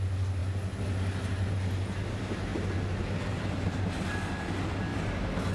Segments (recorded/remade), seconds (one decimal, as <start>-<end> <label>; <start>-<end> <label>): 0.0-5.5 recorded